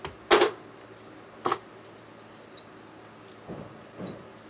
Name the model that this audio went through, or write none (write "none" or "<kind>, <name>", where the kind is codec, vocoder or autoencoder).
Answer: none